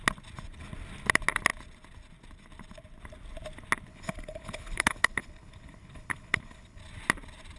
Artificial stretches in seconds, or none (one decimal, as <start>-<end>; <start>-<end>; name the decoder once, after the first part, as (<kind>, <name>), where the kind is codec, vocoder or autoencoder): 3.9-6.8 (codec, HILCodec)